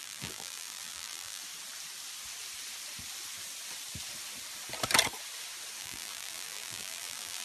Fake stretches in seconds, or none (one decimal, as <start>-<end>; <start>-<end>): 0.0-1.4; 5.8-7.4